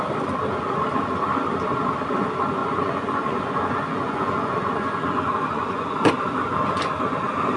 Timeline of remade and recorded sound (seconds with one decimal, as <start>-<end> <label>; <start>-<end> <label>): 0.0-2.6 recorded; 2.6-6.1 remade; 6.1-7.6 recorded